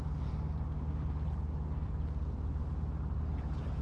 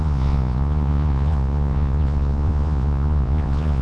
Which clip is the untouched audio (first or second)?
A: first